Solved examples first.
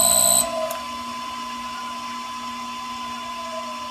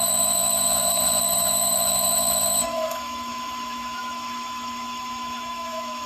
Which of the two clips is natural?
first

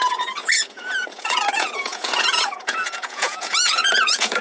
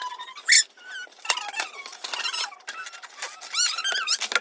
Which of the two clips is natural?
second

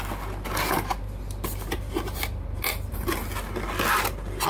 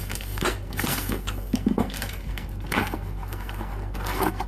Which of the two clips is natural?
first